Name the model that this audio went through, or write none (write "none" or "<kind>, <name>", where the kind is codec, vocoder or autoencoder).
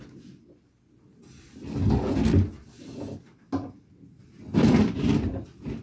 none